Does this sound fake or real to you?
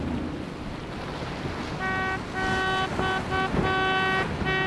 real